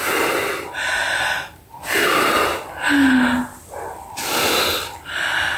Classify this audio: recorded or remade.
recorded